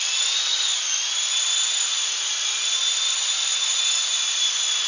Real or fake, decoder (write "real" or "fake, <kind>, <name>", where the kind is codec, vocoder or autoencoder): real